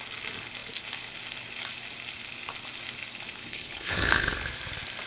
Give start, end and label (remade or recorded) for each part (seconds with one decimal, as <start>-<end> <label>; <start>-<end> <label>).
0.0-3.4 recorded; 3.4-4.3 remade; 4.3-5.1 recorded